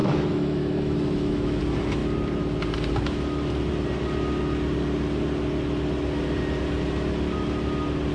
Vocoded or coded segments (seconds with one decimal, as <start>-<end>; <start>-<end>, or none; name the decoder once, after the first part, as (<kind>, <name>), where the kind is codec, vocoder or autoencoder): 0.0-1.6 (autoencoder, DAC-VAE)